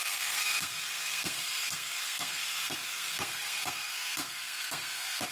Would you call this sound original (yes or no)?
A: no